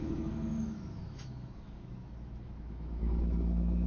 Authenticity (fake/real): fake